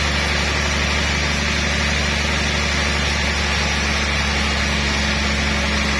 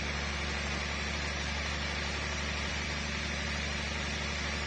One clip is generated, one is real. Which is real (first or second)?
first